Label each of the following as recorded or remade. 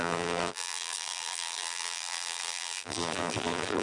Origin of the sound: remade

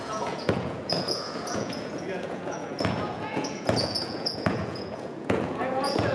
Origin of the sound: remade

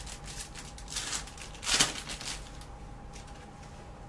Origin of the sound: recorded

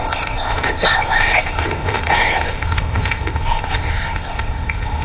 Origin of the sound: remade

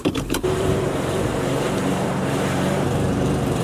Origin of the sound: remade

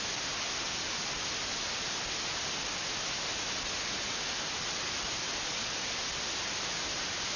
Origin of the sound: recorded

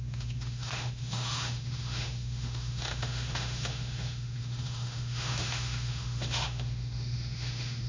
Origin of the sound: remade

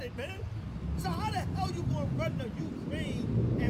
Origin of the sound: recorded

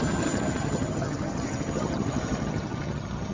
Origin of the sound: remade